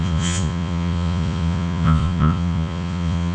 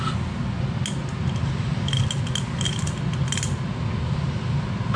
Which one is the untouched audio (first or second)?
second